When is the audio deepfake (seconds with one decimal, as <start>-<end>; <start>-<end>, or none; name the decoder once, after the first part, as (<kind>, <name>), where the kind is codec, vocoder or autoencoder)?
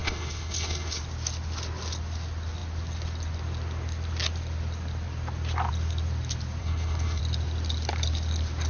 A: 0.0-1.0 (codec, HILCodec); 6.6-7.2